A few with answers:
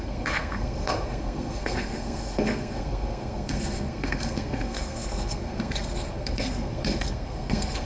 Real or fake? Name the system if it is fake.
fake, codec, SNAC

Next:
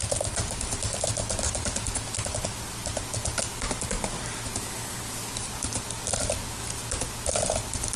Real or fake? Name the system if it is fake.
real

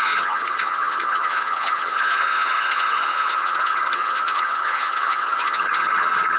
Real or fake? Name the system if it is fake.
fake, vocoder, HiFi-GAN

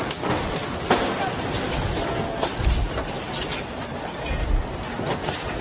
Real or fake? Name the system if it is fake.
real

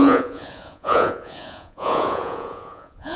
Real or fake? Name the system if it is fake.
fake, vocoder, Vocos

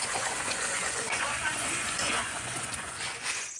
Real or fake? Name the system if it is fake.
fake, vocoder, Vocos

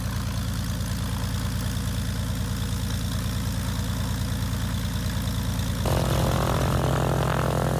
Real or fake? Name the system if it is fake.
real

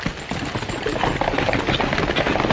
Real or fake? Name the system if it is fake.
real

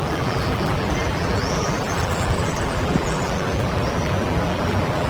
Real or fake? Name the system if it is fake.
fake, vocoder, BigVGAN v2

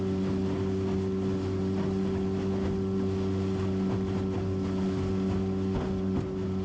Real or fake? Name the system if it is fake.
real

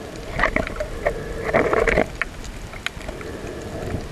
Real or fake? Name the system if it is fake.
real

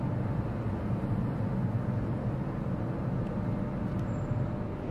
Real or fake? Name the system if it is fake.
real